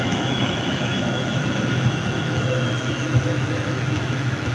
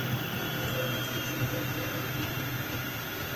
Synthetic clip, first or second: first